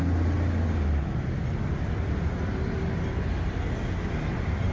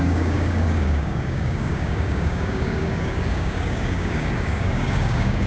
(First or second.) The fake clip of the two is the second